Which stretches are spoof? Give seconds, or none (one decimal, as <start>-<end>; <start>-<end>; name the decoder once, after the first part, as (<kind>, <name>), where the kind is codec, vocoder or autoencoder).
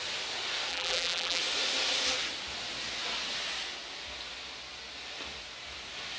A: 0.7-1.4 (vocoder, BigVGAN v2)